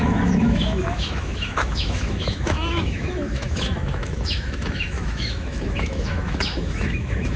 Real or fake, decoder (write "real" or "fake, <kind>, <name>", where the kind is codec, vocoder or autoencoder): fake, autoencoder, DAC-VAE